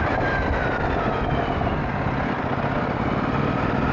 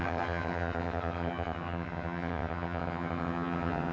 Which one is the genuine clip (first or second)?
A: first